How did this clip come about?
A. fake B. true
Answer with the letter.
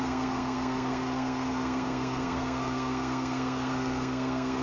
A